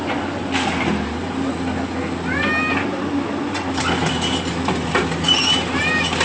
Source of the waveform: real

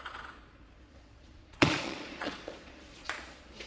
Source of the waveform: fake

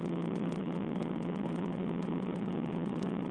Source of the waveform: fake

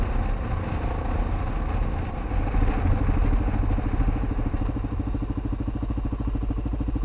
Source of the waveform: real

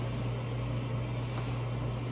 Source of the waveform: real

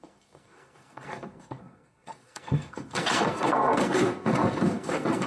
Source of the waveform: fake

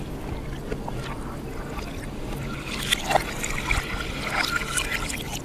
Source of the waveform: real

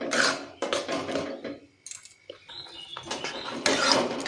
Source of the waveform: real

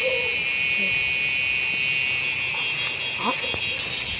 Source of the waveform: real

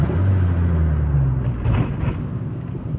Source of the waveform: real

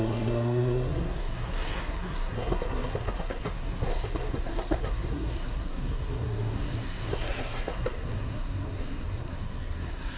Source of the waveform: fake